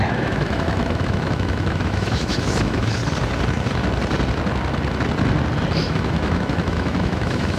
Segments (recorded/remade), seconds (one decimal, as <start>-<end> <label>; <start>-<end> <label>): 0.0-3.0 remade; 3.0-5.8 recorded; 5.8-7.6 remade